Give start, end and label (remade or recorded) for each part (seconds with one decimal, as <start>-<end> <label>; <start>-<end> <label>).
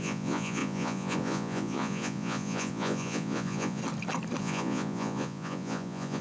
0.0-3.8 remade; 3.8-4.4 recorded; 4.4-6.2 remade